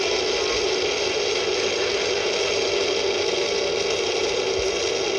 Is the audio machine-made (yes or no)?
no